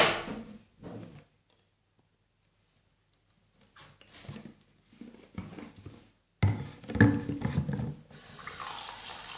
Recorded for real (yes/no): yes